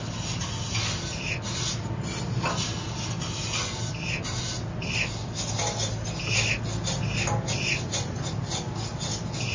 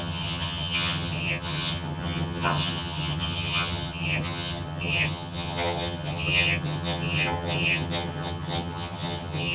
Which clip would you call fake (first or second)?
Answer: second